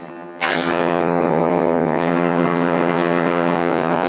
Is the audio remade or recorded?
remade